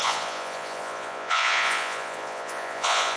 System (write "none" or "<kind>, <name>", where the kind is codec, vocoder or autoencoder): vocoder, Vocos